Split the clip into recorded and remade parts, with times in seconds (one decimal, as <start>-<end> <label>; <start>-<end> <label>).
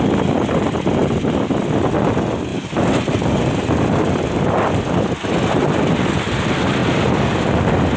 0.0-8.0 recorded